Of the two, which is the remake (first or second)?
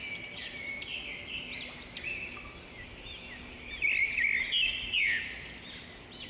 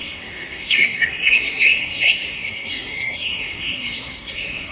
second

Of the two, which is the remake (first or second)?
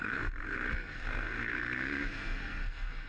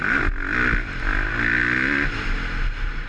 first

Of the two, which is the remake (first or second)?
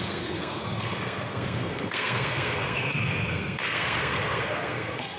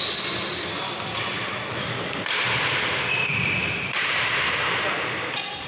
first